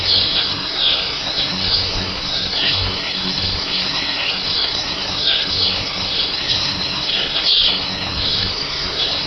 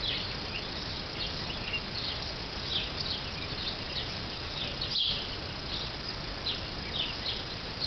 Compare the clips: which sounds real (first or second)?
second